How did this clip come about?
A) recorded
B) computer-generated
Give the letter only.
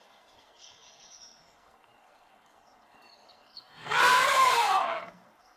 B